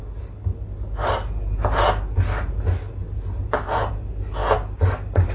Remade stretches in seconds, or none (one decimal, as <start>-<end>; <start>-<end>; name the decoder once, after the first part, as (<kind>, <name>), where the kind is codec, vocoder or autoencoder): none